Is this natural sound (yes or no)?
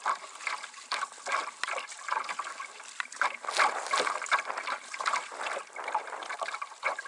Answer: yes